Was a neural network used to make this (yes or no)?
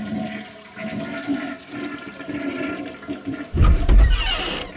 yes